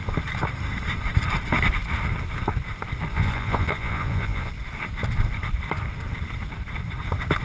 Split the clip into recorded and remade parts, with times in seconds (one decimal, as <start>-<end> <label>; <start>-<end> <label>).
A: 0.0-3.1 recorded; 3.1-4.5 remade; 4.5-7.4 recorded